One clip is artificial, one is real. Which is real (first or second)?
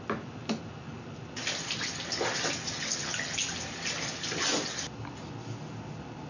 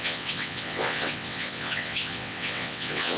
first